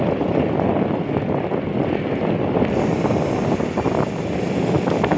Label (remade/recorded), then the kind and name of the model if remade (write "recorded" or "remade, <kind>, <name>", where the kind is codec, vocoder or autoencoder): recorded